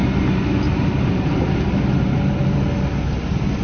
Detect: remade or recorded recorded